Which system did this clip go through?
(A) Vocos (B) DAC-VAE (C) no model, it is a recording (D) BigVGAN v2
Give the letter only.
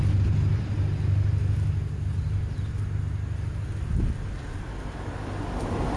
C